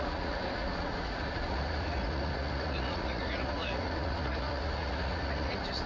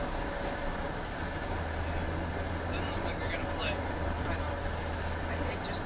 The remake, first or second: first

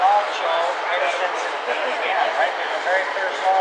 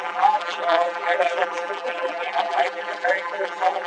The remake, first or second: second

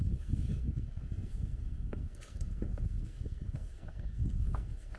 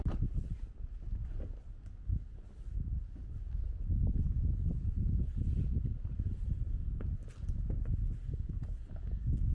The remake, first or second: first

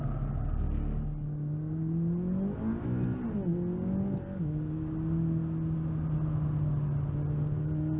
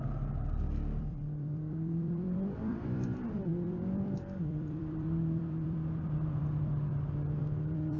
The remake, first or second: second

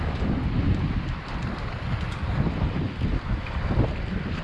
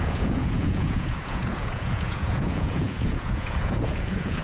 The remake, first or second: second